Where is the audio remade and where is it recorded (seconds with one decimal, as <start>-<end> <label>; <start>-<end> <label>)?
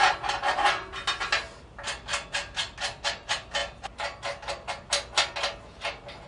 0.0-6.3 recorded